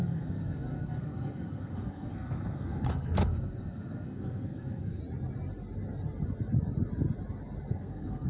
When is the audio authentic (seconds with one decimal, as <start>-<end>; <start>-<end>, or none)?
5.0-7.7